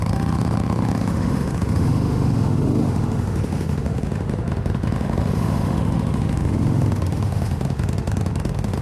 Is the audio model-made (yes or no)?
yes